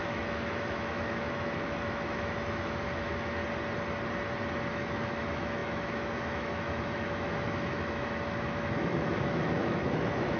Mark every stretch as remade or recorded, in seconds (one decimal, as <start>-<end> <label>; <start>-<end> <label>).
0.0-3.4 remade; 3.4-4.7 recorded; 4.7-10.4 remade